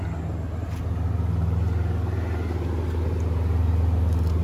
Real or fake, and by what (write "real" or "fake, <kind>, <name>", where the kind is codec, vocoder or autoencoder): real